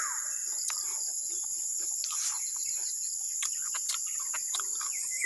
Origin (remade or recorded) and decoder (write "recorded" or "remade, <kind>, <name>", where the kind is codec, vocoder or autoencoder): remade, vocoder, BigVGAN v2